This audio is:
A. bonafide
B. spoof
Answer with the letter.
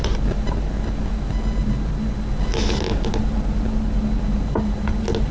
A